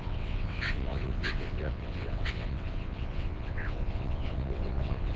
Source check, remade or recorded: remade